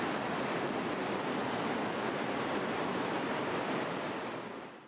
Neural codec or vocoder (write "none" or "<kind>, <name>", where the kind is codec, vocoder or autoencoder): none